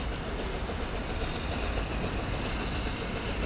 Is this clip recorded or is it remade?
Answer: recorded